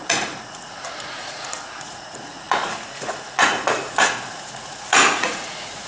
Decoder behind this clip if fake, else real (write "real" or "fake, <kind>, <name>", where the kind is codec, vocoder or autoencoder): fake, vocoder, Vocos